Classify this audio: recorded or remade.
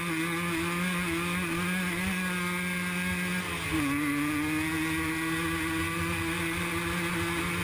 recorded